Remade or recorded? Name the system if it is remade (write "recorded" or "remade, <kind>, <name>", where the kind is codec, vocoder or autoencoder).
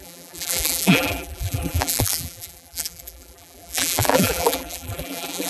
remade, vocoder, BigVGAN v2